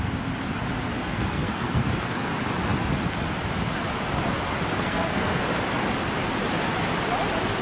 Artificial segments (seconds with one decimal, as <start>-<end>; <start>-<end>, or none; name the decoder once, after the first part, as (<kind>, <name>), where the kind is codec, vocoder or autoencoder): 0.9-2.3 (codec, SNAC); 4.7-5.4